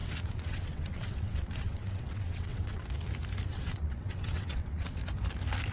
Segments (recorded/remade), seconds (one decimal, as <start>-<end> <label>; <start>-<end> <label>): 0.0-2.8 remade; 2.8-3.5 recorded; 3.5-5.0 remade; 5.0-5.7 recorded

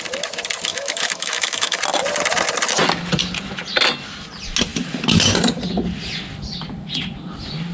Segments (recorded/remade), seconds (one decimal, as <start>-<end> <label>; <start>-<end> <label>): 0.0-0.7 recorded; 0.7-1.8 remade; 1.8-7.7 recorded

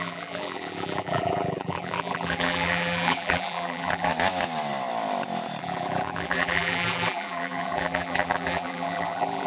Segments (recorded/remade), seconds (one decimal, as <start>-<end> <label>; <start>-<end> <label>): 0.0-4.1 remade; 4.1-5.6 recorded; 5.6-9.5 remade

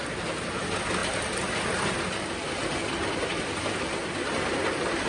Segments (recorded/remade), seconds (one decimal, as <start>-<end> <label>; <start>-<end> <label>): 0.0-5.1 recorded

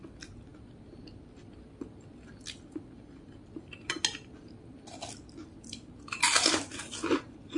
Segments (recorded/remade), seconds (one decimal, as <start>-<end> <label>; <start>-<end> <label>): 0.0-7.6 recorded

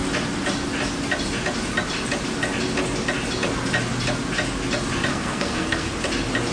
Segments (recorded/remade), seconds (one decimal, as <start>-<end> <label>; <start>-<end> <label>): 0.0-5.1 recorded; 5.1-5.9 remade; 5.9-6.5 recorded

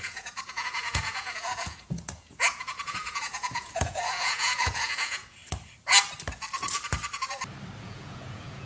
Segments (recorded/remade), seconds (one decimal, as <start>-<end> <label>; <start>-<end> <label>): 0.0-5.4 remade; 5.4-7.8 recorded; 7.8-8.7 remade